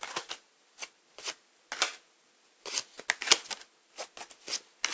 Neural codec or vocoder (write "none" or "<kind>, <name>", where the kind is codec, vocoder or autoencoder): none